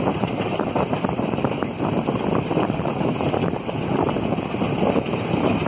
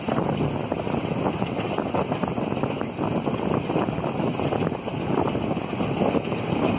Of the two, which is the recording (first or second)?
second